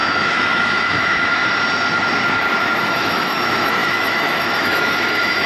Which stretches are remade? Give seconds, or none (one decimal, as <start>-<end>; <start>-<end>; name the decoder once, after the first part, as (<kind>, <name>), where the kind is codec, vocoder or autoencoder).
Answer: 0.0-1.4 (autoencoder, DAC-VAE); 2.6-5.5